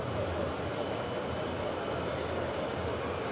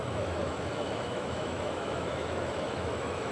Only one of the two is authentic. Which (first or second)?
first